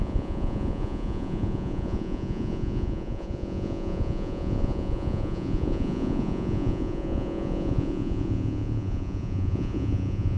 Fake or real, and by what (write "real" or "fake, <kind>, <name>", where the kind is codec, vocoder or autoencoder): fake, vocoder, Vocos